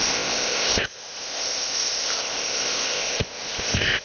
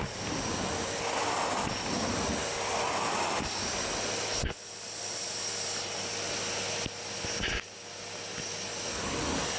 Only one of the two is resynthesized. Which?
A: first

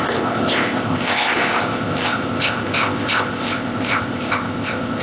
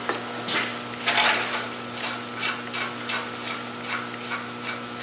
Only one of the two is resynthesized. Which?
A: first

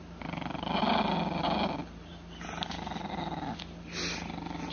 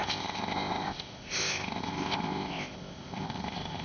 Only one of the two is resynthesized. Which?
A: second